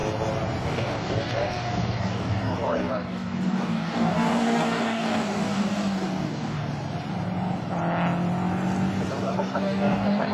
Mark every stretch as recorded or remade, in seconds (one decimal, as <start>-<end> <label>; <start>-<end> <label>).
0.0-0.6 recorded; 0.6-6.7 remade; 6.7-9.2 recorded; 9.2-10.3 remade